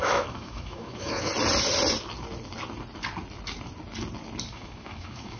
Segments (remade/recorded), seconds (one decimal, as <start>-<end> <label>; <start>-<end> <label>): 0.0-1.3 remade; 1.3-4.5 recorded; 4.5-5.4 remade